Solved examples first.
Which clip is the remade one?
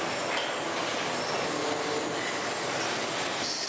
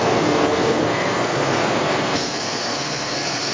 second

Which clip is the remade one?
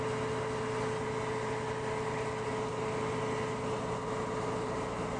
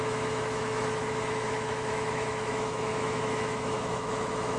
second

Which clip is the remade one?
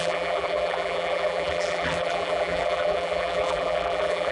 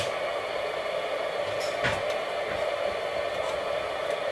first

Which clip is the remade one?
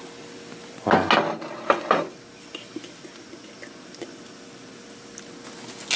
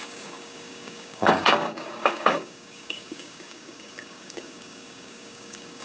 second